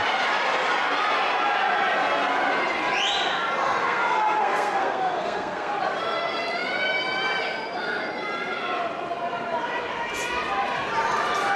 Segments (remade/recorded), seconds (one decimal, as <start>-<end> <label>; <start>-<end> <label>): 0.0-3.8 recorded; 3.8-5.7 remade; 5.7-11.6 recorded